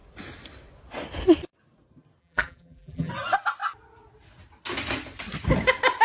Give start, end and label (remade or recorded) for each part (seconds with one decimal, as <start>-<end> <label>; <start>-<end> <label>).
0.0-2.2 recorded; 2.2-3.1 remade; 3.1-6.0 recorded